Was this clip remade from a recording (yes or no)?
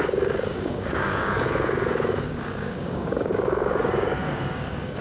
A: yes